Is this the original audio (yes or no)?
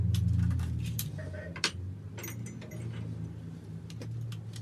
yes